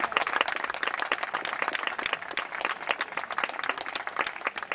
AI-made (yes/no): no